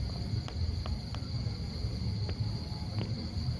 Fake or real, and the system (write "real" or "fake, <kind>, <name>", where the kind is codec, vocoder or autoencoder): real